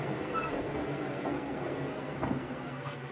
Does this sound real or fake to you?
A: fake